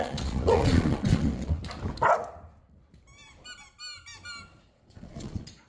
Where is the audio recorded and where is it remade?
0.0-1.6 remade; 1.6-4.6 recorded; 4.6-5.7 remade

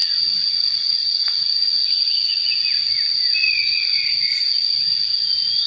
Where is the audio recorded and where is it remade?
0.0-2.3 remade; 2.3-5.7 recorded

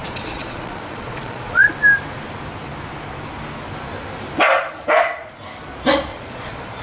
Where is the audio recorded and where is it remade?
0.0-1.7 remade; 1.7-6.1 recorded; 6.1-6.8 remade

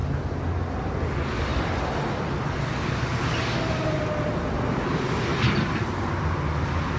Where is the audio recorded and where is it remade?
0.0-7.0 recorded

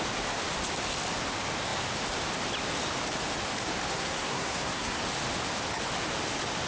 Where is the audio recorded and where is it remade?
0.0-3.9 recorded; 3.9-5.0 remade; 5.0-6.7 recorded

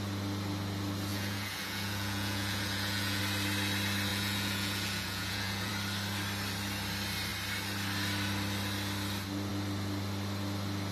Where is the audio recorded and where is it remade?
0.0-1.1 recorded; 1.1-3.2 remade; 3.2-4.1 recorded; 4.1-5.7 remade; 5.7-10.9 recorded

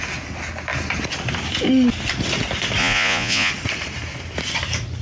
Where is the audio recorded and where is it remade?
0.0-2.8 recorded; 2.8-3.5 remade; 3.5-5.0 recorded